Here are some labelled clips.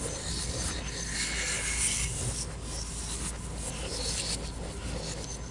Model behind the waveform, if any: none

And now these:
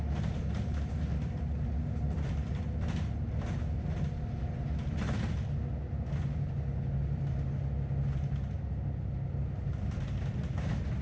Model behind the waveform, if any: none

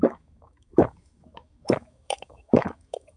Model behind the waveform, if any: autoencoder, DAC-VAE